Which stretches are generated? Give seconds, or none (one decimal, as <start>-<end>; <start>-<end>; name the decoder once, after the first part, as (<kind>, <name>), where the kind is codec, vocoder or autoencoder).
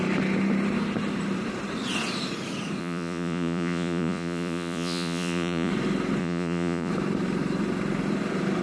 2.8-5.7 (vocoder, Vocos); 6.2-6.9